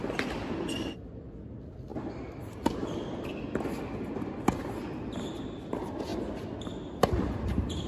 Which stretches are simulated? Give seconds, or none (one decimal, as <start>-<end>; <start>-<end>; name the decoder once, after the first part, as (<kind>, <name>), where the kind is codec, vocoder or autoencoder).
none